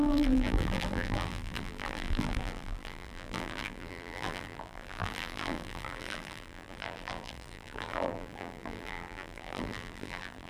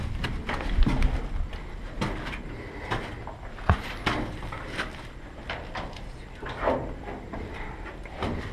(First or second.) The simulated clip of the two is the first